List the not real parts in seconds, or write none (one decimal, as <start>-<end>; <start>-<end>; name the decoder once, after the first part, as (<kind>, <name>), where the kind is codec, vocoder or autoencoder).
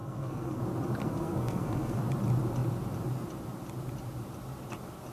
0.0-0.6 (codec, SNAC); 1.0-2.0